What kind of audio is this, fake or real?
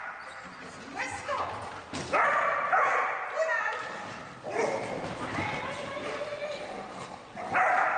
real